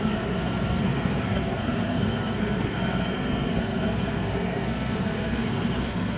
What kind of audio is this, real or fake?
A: fake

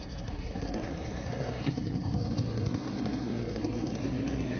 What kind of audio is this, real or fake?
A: fake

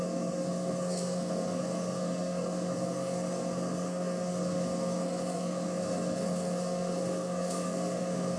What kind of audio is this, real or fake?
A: fake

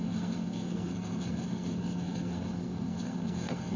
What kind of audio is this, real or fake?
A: fake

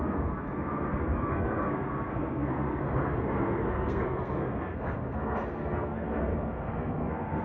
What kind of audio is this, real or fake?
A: fake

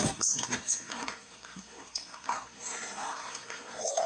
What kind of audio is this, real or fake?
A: fake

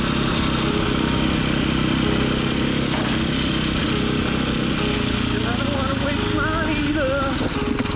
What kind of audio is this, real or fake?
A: real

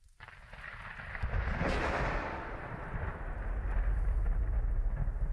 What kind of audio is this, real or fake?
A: real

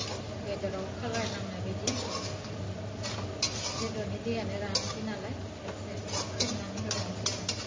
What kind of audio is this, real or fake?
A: real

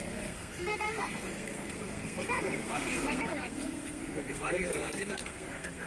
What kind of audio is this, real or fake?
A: fake